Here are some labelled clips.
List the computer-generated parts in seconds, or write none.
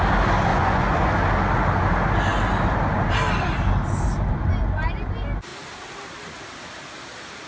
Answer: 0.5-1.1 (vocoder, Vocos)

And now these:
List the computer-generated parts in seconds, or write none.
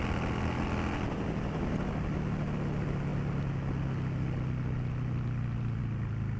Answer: none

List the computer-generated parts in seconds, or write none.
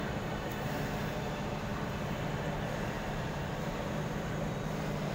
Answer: 0.0-0.5 (vocoder, BigVGAN v2); 1.0-5.1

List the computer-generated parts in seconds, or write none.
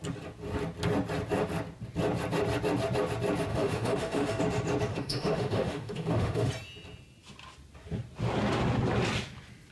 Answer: 3.5-4.4 (autoencoder, DAC-VAE); 4.9-6.5